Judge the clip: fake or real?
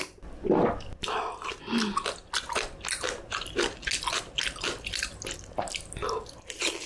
real